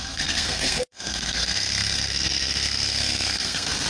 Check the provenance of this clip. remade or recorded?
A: remade